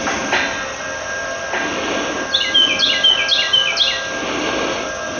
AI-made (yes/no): no